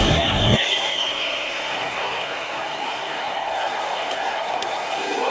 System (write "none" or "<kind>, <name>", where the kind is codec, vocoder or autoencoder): codec, SNAC